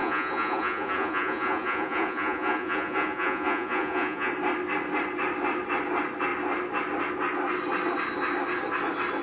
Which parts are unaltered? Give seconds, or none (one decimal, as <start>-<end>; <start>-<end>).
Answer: 4.3-9.2